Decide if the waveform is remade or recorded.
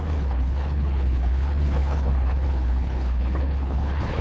remade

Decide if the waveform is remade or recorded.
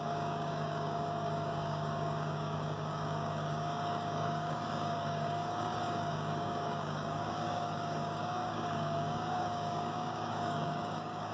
remade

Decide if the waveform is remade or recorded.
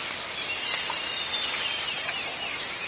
recorded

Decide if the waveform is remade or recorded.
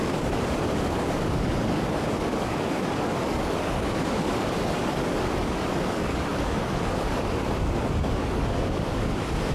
remade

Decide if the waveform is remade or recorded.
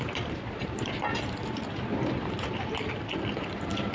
recorded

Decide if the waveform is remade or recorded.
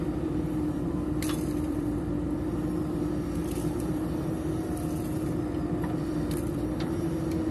remade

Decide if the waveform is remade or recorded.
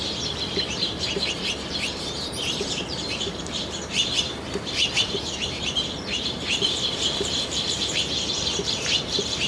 remade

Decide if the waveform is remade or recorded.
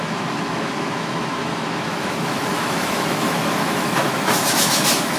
remade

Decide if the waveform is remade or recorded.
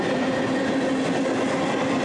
recorded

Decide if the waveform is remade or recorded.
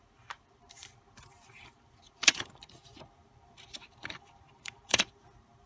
remade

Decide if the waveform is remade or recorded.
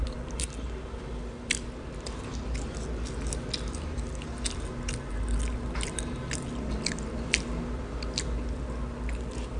recorded